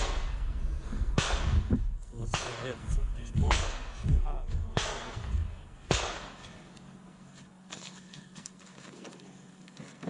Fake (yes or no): yes